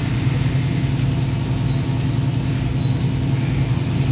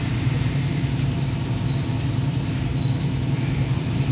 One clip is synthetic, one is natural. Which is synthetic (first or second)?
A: second